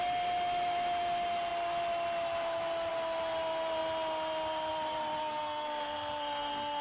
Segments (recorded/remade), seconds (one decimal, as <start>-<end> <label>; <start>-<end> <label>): 0.0-5.2 recorded; 5.2-6.8 remade